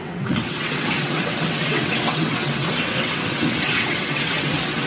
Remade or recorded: remade